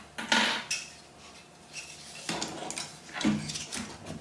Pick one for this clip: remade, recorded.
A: recorded